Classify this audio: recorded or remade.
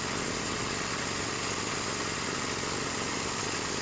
recorded